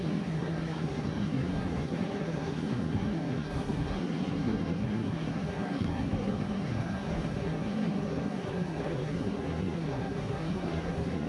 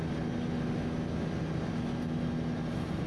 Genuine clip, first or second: second